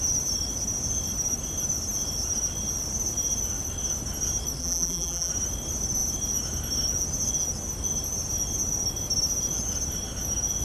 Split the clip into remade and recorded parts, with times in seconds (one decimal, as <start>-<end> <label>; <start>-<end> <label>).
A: 0.0-4.6 recorded; 4.6-5.3 remade; 5.3-10.6 recorded